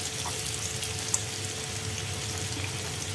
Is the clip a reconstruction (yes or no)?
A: no